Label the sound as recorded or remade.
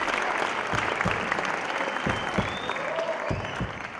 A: recorded